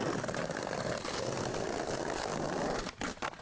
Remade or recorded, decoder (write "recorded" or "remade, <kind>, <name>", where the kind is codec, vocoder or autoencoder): recorded